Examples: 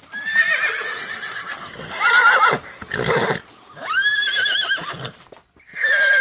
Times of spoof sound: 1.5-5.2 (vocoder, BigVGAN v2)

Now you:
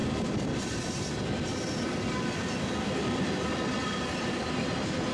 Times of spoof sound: 0.0-1.1 (vocoder, BigVGAN v2); 3.8-4.6

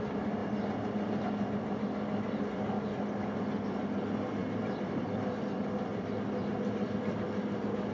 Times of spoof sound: 4.4-5.4 (vocoder, BigVGAN v2)

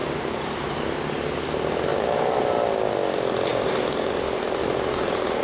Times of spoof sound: 0.0-0.8 (vocoder, BigVGAN v2); 1.9-2.4; 3.5-4.1; 4.6-5.4

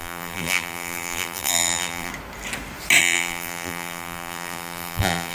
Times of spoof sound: 0.0-2.1 (vocoder, BigVGAN v2); 3.0-5.3

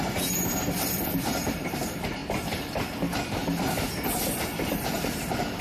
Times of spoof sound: 0.0-2.2 (vocoder, BigVGAN v2)